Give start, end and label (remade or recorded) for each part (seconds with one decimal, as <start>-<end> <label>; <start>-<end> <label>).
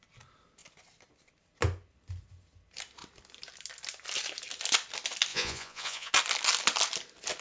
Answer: 0.0-5.3 recorded; 5.3-6.1 remade; 6.1-7.4 recorded